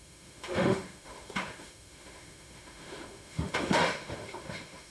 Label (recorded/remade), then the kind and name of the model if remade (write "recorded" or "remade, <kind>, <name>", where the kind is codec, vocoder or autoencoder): remade, autoencoder, DAC-VAE